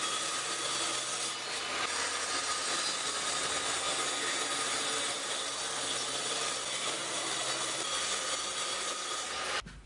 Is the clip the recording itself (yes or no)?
yes